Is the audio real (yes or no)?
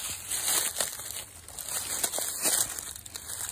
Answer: yes